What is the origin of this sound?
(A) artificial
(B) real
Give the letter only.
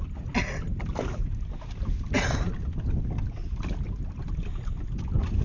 B